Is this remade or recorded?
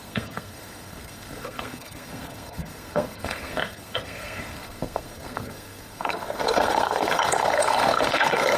remade